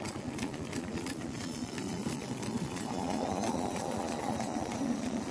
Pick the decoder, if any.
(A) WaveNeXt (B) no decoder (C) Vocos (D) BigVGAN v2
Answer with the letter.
C